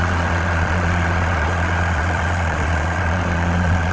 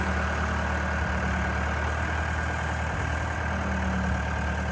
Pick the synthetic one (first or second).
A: first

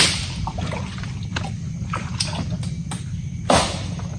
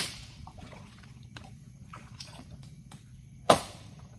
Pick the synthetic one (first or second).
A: second